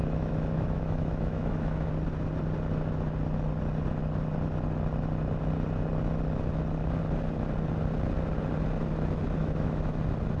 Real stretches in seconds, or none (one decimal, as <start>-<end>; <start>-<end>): 1.9-9.4; 10.0-10.4